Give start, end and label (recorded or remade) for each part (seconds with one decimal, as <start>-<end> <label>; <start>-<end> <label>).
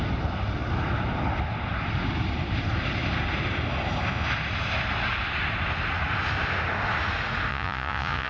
0.0-7.5 recorded; 7.5-8.3 remade